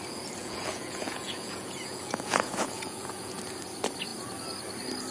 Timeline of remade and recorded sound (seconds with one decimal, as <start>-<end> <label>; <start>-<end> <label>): 0.0-0.4 recorded; 0.4-3.4 remade; 3.4-5.1 recorded